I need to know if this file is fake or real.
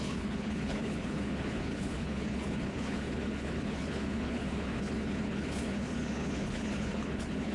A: fake